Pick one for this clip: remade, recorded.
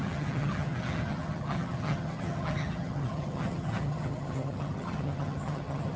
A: remade